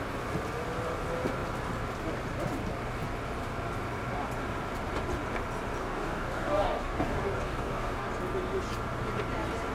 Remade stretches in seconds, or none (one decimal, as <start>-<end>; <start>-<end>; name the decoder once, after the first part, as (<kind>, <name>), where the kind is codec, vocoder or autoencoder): 5.8-8.1 (codec, DAC)